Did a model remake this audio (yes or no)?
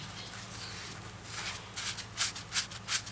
no